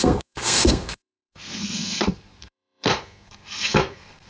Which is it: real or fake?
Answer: fake